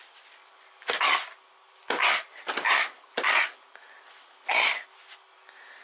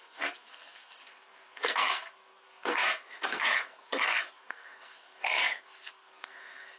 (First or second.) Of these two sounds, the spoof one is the second